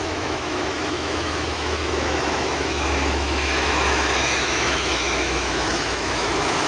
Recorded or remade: remade